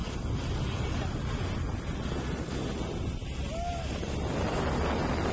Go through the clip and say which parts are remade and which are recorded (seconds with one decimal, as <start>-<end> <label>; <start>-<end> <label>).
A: 0.0-5.3 recorded